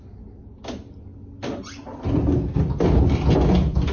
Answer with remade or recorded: recorded